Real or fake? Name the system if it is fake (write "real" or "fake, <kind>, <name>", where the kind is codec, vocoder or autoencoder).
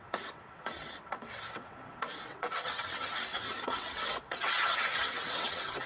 fake, vocoder, WaveNeXt